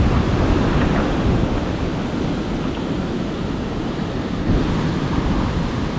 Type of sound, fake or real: real